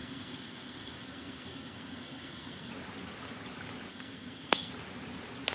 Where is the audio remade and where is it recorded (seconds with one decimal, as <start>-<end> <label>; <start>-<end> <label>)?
0.0-2.7 remade; 2.7-3.9 recorded; 3.9-4.7 remade; 4.7-5.5 recorded

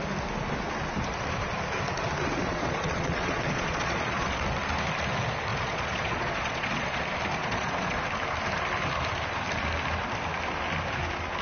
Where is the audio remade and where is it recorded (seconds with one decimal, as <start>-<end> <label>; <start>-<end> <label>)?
0.0-2.3 recorded; 2.3-4.4 remade; 4.4-5.5 recorded; 5.5-7.0 remade; 7.0-7.4 recorded; 7.4-8.0 remade; 8.0-11.4 recorded

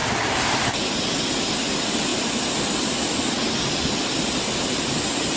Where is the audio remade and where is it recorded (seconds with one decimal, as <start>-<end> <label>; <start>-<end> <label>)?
0.0-0.7 remade; 0.7-5.4 recorded

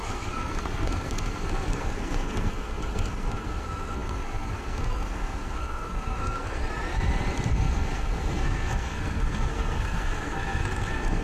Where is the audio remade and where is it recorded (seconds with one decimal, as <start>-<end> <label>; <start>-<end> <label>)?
0.0-6.6 remade; 6.6-7.5 recorded; 7.5-11.2 remade

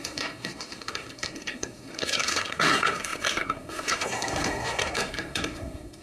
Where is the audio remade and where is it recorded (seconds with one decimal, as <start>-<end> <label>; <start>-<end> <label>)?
0.0-6.0 remade

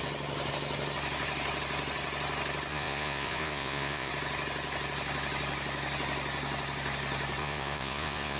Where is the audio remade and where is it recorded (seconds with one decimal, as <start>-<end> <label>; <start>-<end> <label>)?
0.0-2.7 recorded; 2.7-4.1 remade; 4.1-7.4 recorded; 7.4-8.4 remade